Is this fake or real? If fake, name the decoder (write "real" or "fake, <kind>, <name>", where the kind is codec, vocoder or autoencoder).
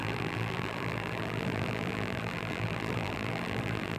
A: fake, vocoder, BigVGAN v2